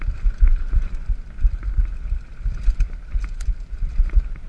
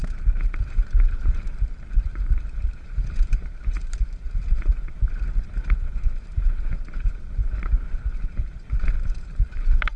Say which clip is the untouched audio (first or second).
first